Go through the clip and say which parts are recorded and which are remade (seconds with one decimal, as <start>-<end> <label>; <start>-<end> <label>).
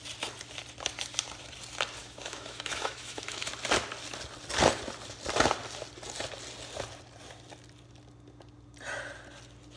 0.0-2.0 recorded; 2.0-3.5 remade; 3.5-9.8 recorded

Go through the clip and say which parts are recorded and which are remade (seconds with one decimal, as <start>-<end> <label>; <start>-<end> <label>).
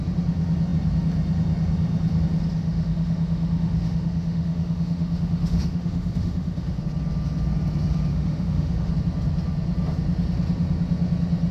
0.0-2.6 recorded; 2.6-6.8 remade; 6.8-8.1 recorded; 8.1-8.9 remade; 8.9-11.5 recorded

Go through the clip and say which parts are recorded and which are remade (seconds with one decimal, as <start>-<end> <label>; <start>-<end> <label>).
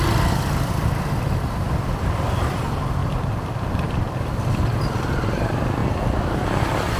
0.0-7.0 recorded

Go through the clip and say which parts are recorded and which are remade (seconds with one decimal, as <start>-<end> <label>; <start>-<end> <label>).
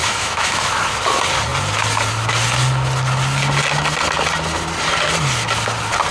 0.0-0.6 remade; 0.6-6.1 recorded